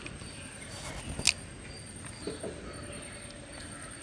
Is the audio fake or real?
real